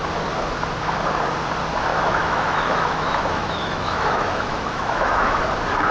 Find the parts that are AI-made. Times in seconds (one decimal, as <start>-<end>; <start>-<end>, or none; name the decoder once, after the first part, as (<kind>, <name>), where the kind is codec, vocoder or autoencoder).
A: 1.9-5.4 (autoencoder, DAC-VAE)